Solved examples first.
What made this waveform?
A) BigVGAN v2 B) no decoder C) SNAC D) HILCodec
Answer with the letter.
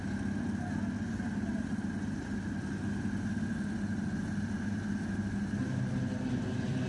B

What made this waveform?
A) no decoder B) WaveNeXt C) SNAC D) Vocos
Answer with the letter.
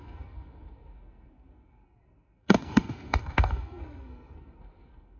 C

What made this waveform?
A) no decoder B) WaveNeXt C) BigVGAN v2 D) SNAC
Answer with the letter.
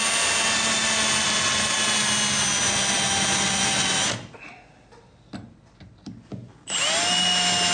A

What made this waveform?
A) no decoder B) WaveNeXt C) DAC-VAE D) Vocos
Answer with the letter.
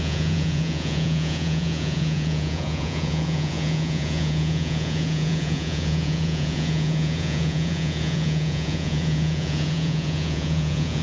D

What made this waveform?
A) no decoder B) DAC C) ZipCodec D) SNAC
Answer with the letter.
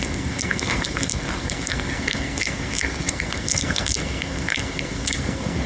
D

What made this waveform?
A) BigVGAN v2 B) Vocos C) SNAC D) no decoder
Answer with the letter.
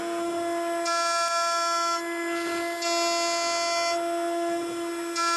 D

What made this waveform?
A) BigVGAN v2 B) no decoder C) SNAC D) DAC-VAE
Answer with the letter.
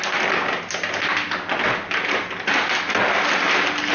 B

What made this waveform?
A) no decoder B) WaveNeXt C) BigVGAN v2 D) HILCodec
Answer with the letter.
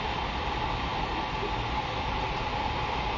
A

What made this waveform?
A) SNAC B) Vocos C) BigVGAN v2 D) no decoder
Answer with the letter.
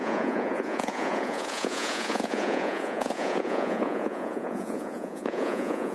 B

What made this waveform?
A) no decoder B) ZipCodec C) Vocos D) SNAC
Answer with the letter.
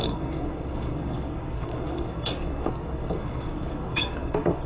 D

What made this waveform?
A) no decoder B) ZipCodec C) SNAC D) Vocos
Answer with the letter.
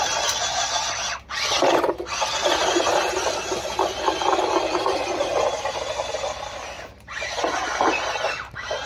A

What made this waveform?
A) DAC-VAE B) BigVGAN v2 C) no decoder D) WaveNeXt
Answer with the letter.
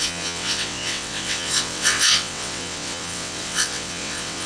D